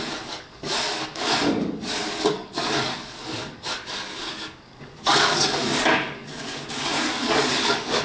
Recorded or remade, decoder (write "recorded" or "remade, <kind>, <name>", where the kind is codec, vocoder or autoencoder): remade, codec, DAC